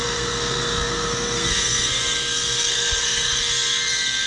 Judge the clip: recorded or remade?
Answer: remade